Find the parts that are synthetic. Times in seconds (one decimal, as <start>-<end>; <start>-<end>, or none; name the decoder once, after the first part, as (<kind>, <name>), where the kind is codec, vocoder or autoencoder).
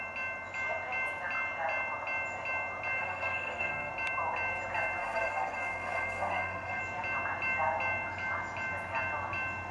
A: 3.0-3.9 (codec, SNAC); 5.0-6.8